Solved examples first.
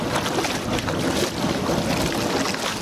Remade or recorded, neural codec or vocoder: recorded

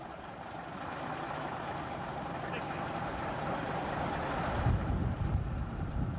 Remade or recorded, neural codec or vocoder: remade, vocoder, BigVGAN v2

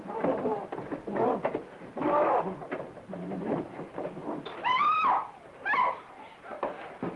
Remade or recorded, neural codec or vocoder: remade, vocoder, BigVGAN v2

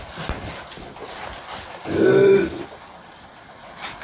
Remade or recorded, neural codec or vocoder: remade, vocoder, BigVGAN v2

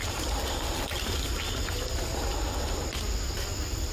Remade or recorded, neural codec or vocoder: remade, vocoder, BigVGAN v2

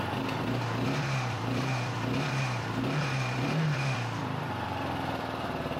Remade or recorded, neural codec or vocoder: remade, vocoder, BigVGAN v2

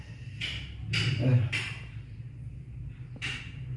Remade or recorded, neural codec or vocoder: remade, vocoder, BigVGAN v2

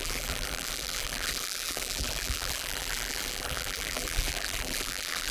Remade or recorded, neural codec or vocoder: remade, vocoder, BigVGAN v2